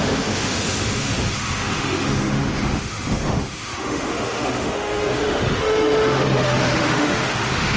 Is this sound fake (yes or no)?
yes